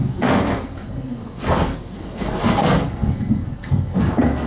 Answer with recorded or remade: remade